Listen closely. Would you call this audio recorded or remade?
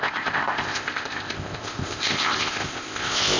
remade